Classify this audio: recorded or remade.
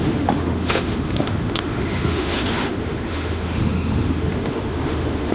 remade